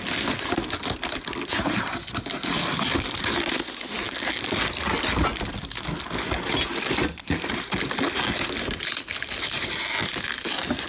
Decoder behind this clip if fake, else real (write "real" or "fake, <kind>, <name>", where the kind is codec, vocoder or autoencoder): real